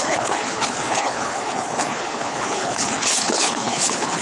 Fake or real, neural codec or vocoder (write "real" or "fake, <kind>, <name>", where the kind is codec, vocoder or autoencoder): fake, codec, HILCodec